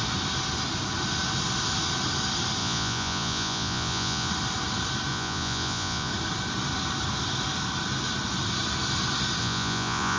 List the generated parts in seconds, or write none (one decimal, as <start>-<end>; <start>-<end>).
2.6-4.3; 5.1-6.1; 9.4-10.2